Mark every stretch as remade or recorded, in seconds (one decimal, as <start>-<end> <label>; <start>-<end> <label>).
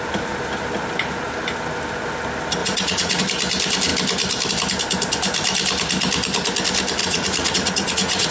0.0-2.6 recorded; 2.6-3.2 remade; 3.2-7.0 recorded; 7.0-8.3 remade